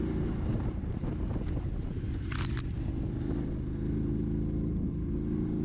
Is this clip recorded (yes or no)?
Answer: yes